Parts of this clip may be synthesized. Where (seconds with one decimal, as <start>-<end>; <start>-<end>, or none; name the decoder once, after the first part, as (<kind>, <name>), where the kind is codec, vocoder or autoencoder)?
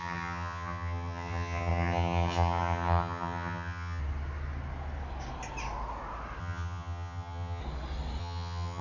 0.0-4.0 (vocoder, HiFi-GAN); 6.4-7.6; 8.2-8.8